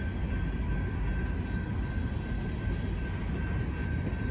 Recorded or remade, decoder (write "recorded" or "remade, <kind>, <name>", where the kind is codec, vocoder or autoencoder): recorded